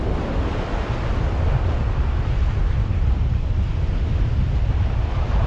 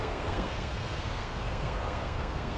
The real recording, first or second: first